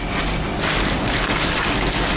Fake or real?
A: real